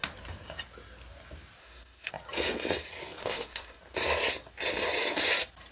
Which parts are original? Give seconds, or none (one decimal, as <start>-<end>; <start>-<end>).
0.0-1.6; 2.1-3.2; 3.8-5.7